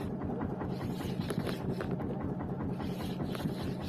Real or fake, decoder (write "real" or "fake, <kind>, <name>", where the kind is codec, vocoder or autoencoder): real